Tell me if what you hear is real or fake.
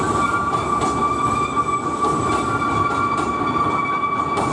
real